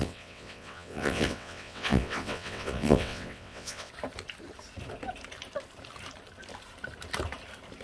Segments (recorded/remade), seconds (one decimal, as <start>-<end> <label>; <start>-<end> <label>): 0.0-3.9 remade; 3.9-7.8 recorded